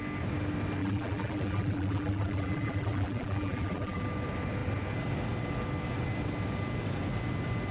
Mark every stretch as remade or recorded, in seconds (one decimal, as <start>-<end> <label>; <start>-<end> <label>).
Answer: 0.0-0.8 recorded; 0.8-4.0 remade; 4.0-7.7 recorded